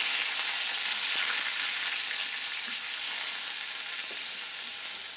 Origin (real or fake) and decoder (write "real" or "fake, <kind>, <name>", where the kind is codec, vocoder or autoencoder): real